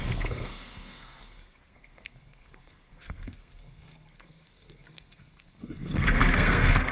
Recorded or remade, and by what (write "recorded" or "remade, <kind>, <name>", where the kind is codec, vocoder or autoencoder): remade, codec, SNAC